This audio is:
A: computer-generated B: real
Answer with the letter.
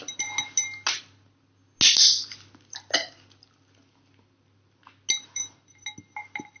B